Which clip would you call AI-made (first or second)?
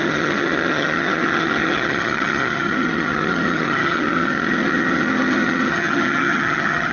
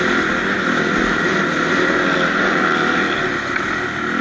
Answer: first